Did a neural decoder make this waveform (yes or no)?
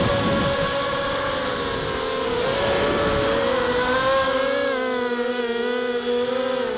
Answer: no